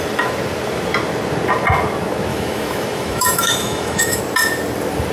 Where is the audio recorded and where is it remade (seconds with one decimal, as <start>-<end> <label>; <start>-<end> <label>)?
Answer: 0.0-2.3 recorded; 2.3-4.2 remade; 4.2-5.1 recorded